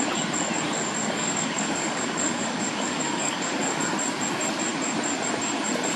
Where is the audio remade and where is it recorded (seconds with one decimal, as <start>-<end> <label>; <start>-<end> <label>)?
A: 0.0-1.0 recorded; 1.0-3.8 remade; 3.8-6.0 recorded